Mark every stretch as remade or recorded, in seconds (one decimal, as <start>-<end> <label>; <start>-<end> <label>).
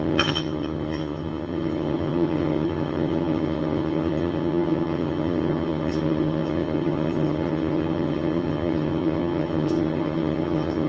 0.0-10.9 remade